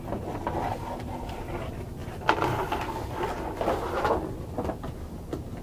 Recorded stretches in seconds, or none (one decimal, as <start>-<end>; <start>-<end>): 0.0-5.6

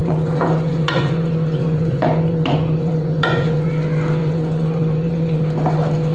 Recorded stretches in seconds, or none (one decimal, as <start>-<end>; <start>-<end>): 3.7-4.2; 5.4-6.1

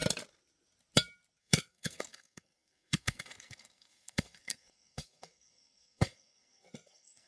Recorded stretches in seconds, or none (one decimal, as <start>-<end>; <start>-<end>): 0.0-1.4

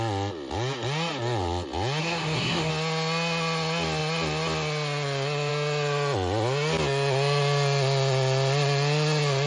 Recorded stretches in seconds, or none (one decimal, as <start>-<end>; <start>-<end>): 0.0-2.0; 2.7-9.5

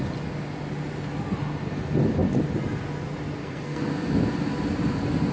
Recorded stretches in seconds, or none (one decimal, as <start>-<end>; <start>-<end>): 0.0-3.4; 3.9-5.3

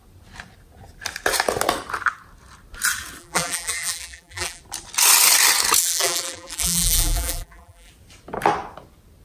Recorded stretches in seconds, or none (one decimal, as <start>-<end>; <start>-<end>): 0.0-3.2; 4.6-5.8; 7.9-9.2

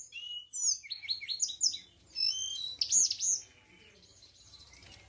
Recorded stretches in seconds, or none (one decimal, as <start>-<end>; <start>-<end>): 0.0-5.1